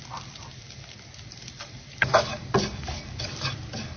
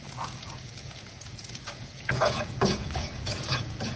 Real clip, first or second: first